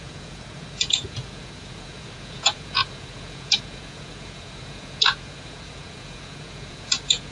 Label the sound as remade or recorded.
remade